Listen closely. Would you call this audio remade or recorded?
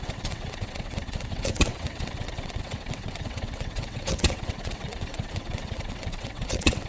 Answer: remade